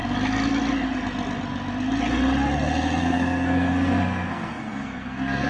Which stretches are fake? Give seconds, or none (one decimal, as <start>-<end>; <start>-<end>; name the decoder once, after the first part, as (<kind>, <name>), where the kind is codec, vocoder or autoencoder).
3.0-5.5 (codec, SNAC)